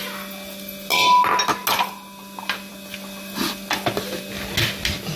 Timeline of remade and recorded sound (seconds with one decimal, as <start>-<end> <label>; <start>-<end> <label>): 0.0-5.2 recorded